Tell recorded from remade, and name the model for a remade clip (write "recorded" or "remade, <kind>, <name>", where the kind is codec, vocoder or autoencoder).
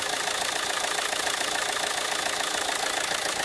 recorded